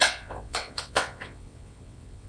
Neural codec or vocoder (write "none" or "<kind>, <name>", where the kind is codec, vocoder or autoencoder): vocoder, WaveNeXt